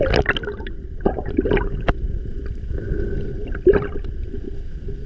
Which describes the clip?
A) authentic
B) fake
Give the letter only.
A